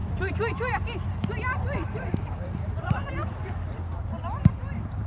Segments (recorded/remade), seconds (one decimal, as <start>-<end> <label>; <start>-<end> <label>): 0.0-3.1 remade; 3.1-3.9 recorded; 3.9-4.5 remade; 4.5-5.1 recorded